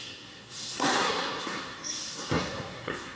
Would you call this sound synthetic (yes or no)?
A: yes